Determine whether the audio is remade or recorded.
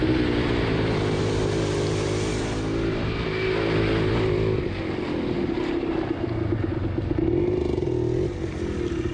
recorded